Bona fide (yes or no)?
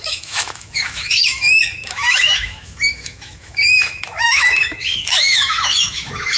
no